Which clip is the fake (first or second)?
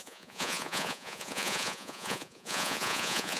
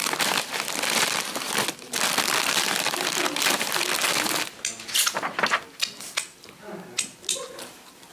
first